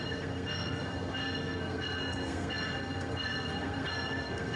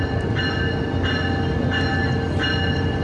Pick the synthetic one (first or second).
first